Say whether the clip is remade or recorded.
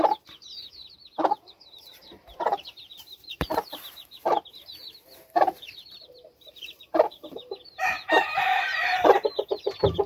remade